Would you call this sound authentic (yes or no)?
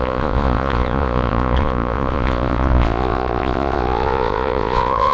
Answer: no